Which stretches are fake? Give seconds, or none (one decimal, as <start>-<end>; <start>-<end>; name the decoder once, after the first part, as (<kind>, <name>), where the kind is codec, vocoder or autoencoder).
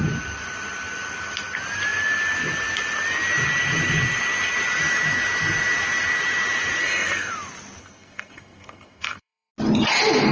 6.8-7.3 (codec, SNAC); 7.8-9.5